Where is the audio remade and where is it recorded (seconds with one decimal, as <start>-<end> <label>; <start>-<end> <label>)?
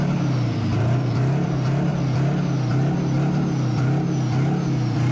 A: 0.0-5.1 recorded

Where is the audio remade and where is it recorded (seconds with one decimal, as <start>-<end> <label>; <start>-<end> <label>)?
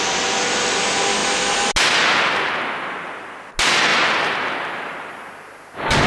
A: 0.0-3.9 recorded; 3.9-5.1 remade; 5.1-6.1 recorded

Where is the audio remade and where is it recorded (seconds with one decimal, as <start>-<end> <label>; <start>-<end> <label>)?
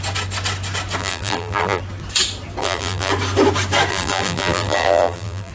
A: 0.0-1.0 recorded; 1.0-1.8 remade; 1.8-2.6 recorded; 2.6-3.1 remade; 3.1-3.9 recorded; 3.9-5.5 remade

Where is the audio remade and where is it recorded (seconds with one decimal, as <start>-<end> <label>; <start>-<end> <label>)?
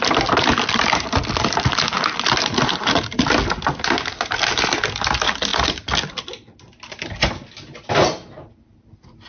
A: 0.0-9.3 recorded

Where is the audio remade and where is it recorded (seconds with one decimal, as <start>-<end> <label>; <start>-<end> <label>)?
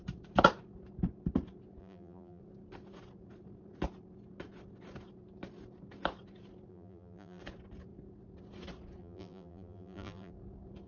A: 0.0-1.8 recorded; 1.8-2.4 remade; 2.4-6.7 recorded; 6.7-7.4 remade; 7.4-9.0 recorded; 9.0-10.3 remade; 10.3-10.9 recorded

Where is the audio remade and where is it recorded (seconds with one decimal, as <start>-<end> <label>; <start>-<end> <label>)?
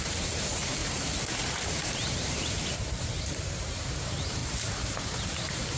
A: 0.0-0.8 remade; 0.8-2.0 recorded; 2.0-4.4 remade; 4.4-4.9 recorded; 4.9-5.8 remade